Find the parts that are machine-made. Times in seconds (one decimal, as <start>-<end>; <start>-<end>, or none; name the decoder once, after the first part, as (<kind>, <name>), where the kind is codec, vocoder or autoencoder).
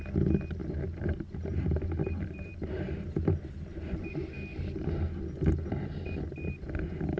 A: 0.6-4.1 (vocoder, BigVGAN v2)